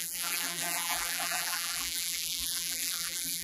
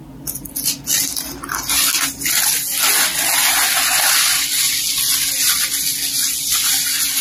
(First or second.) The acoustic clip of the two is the second